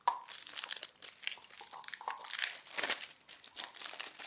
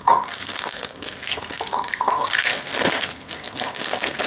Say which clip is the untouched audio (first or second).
first